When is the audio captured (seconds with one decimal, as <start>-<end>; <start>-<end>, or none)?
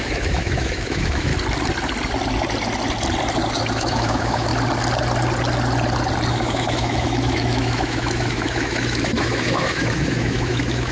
1.3-3.7; 4.5-6.3